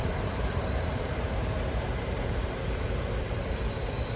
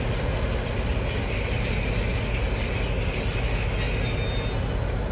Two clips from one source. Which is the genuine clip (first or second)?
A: second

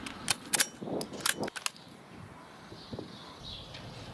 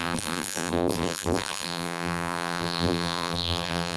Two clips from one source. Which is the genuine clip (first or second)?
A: first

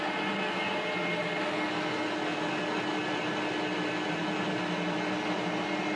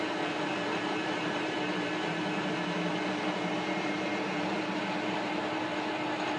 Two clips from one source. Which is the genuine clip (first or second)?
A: first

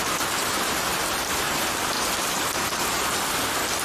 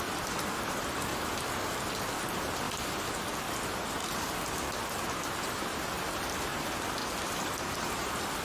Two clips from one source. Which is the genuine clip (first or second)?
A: second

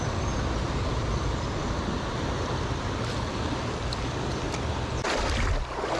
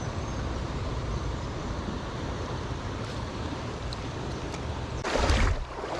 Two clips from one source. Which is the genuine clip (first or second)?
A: first